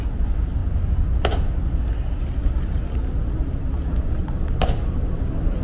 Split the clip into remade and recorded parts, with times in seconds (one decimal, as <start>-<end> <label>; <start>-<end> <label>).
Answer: 0.0-5.6 recorded